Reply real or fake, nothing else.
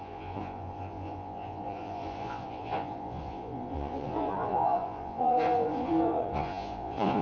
fake